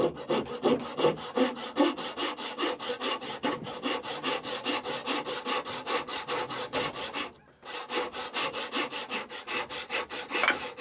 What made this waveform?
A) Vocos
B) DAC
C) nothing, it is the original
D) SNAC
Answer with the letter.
C